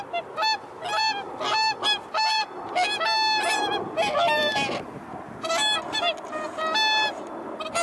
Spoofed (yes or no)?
no